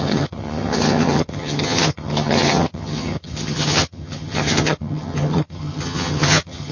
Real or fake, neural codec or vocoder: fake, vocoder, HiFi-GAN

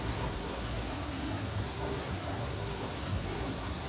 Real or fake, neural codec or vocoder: fake, codec, SNAC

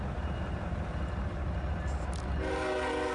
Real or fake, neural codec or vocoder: real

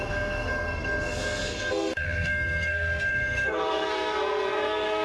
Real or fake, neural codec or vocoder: fake, codec, SNAC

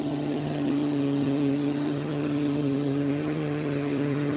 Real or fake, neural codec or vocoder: fake, vocoder, HiFi-GAN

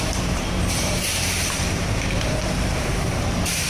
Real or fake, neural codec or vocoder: fake, vocoder, BigVGAN v2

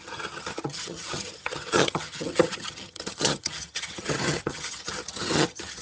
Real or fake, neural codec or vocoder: fake, vocoder, HiFi-GAN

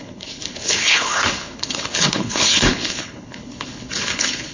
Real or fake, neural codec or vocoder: fake, codec, HILCodec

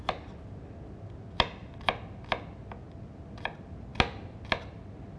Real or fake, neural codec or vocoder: real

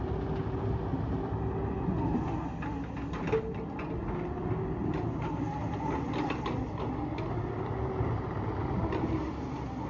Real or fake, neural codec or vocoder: real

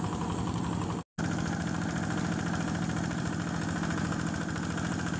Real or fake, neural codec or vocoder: real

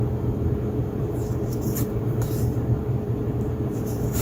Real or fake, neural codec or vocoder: fake, vocoder, BigVGAN v2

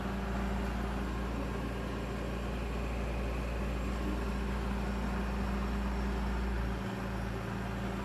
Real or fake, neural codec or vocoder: real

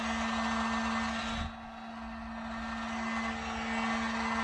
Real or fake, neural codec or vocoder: real